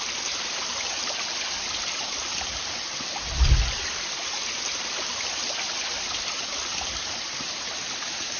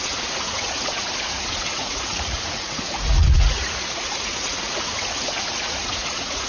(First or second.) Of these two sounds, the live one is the first